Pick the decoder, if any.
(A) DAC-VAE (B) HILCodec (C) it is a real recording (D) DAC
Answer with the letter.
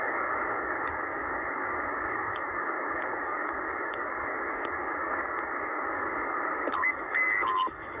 D